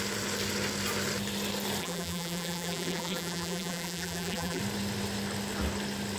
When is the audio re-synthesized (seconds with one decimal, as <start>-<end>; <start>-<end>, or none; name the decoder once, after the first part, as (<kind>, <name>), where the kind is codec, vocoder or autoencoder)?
1.8-4.6 (vocoder, BigVGAN v2)

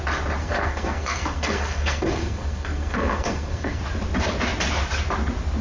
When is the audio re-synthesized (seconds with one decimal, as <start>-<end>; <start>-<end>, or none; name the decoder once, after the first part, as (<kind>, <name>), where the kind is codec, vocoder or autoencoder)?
0.4-3.8 (codec, SNAC)

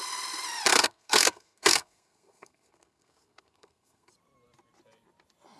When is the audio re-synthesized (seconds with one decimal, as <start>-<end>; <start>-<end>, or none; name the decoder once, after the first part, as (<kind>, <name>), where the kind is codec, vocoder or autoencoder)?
0.7-4.1 (codec, SNAC)

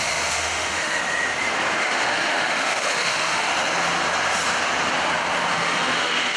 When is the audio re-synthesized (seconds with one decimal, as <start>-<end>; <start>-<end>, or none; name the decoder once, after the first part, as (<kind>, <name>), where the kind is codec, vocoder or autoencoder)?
0.0-1.0 (autoencoder, DAC-VAE); 1.8-3.5; 5.5-6.4

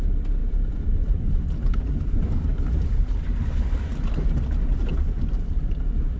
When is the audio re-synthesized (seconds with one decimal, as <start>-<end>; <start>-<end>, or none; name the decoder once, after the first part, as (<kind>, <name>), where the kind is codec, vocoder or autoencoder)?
0.0-3.9 (vocoder, BigVGAN v2); 4.9-6.2

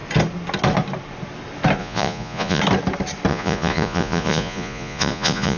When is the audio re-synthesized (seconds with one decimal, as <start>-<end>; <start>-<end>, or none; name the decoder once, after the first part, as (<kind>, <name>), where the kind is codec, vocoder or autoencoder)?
1.8-2.6 (vocoder, Vocos); 3.3-5.6